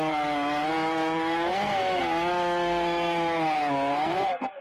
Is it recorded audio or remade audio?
remade